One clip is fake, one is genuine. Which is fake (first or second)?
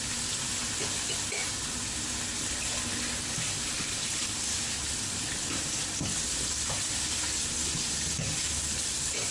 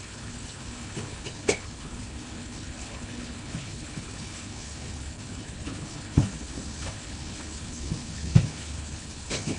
second